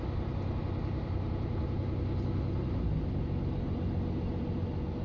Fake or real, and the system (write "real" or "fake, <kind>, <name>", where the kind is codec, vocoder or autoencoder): real